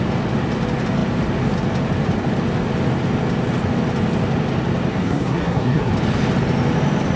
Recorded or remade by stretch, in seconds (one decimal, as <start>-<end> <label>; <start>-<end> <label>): 0.0-4.9 recorded; 4.9-5.9 remade; 5.9-7.2 recorded